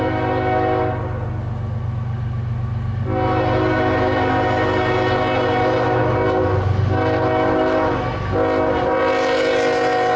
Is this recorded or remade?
recorded